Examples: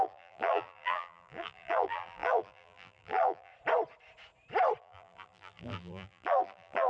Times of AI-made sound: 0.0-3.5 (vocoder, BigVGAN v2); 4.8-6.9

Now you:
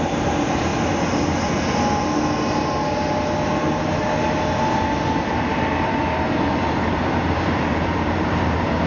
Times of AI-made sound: 0.0-0.7 (vocoder, BigVGAN v2); 5.3-6.0; 6.5-8.9

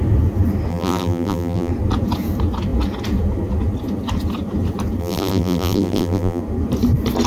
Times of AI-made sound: 0.7-1.7 (vocoder, BigVGAN v2); 5.0-6.4

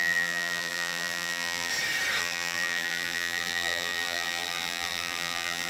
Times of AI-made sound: 0.0-1.7 (vocoder, BigVGAN v2); 2.2-5.7

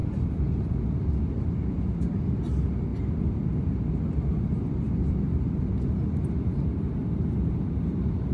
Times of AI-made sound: 7.0-7.5 (vocoder, BigVGAN v2)

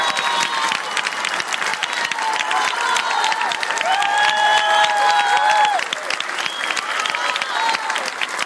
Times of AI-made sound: 1.7-4.0 (vocoder, BigVGAN v2)